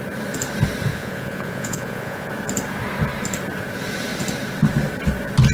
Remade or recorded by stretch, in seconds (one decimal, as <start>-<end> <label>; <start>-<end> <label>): 0.0-0.9 recorded; 0.9-2.3 remade; 2.3-5.5 recorded